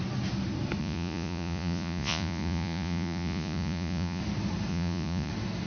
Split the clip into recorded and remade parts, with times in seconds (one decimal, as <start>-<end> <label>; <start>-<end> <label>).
0.0-0.8 recorded; 0.8-4.2 remade; 4.2-4.7 recorded; 4.7-5.3 remade; 5.3-5.7 recorded

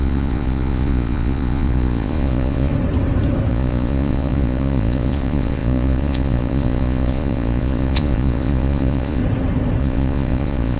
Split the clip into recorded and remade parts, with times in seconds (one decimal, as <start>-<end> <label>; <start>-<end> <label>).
0.0-2.7 remade; 2.7-3.5 recorded; 3.5-9.2 remade; 9.2-9.8 recorded; 9.8-10.8 remade

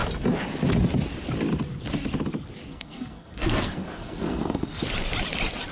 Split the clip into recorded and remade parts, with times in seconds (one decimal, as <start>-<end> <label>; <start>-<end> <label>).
0.0-2.7 recorded; 2.7-4.8 remade; 4.8-5.7 recorded

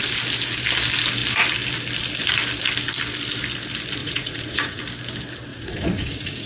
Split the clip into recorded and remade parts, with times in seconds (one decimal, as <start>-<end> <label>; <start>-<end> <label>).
0.0-4.0 recorded; 4.0-4.8 remade; 4.8-5.5 recorded; 5.5-6.5 remade

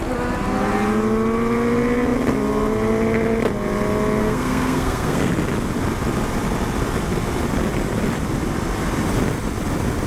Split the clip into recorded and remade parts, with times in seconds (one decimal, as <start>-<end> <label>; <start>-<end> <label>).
0.0-4.2 recorded; 4.2-5.3 remade; 5.3-10.1 recorded

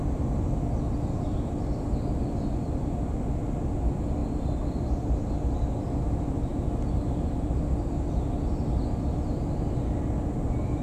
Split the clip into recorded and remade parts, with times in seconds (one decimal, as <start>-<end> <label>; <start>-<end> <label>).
0.0-10.8 recorded

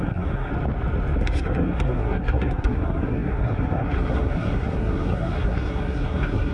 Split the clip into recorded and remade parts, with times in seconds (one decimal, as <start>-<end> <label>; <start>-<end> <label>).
0.0-0.5 remade; 0.5-1.2 recorded; 1.2-6.5 remade

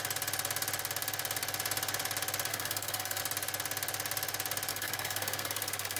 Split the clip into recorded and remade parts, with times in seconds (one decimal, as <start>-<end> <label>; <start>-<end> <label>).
0.0-2.5 recorded; 2.5-3.2 remade; 3.2-4.7 recorded; 4.7-6.0 remade